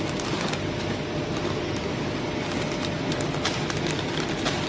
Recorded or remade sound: recorded